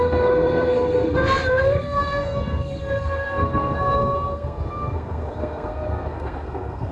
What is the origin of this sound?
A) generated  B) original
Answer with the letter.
A